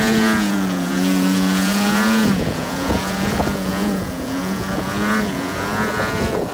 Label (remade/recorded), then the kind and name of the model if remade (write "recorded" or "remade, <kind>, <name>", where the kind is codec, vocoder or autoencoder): remade, vocoder, Vocos